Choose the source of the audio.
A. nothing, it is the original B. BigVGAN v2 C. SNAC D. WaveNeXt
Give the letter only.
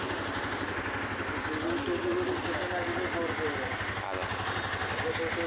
A